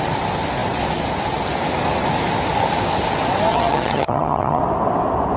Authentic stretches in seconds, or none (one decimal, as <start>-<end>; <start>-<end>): 0.0-3.5; 4.6-5.4

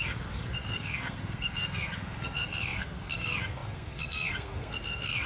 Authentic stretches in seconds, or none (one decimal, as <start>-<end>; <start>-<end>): none

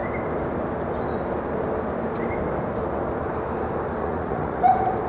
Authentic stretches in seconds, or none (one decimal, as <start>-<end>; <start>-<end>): 0.0-4.0; 4.6-5.1